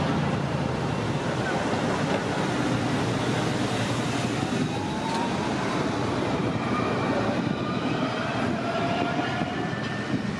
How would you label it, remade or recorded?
remade